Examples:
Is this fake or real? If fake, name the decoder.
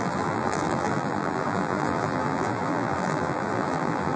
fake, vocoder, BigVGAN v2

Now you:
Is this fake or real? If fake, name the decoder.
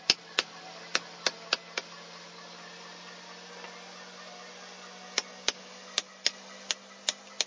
real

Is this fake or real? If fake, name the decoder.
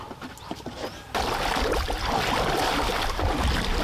real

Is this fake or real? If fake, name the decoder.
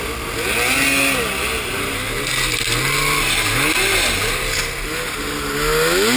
real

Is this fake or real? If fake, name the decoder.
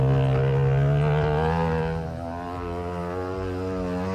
real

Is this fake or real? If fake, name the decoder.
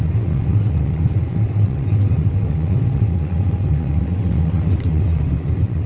fake, vocoder, WaveNeXt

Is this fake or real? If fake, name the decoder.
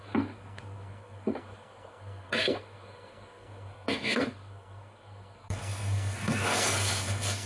fake, codec, SNAC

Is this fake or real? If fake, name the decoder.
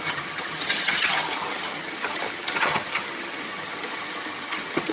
fake, vocoder, HiFi-GAN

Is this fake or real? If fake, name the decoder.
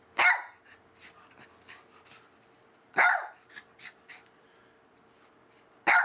real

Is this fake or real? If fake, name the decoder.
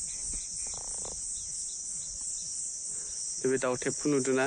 real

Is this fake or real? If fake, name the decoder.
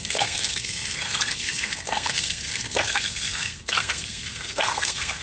fake, codec, SNAC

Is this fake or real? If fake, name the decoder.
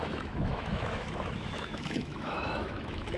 fake, autoencoder, DAC-VAE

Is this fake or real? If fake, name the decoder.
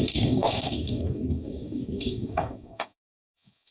fake, codec, DAC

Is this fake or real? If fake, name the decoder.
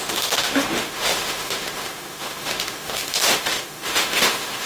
fake, autoencoder, DAC-VAE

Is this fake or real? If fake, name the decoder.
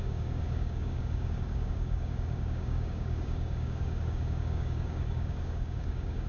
fake, codec, DAC